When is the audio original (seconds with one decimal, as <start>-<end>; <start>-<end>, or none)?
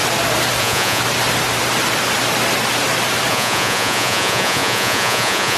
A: 0.0-0.6; 1.0-3.3